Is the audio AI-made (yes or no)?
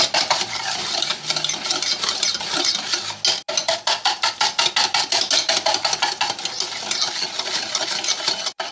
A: no